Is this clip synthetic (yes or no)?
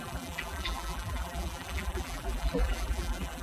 yes